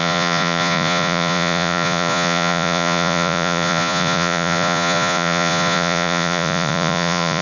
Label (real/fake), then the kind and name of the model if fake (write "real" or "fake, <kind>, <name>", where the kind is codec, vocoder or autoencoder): fake, vocoder, Vocos